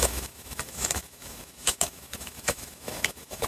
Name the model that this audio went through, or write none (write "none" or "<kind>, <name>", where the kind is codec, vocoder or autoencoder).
autoencoder, DAC-VAE